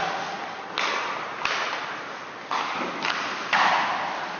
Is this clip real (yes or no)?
yes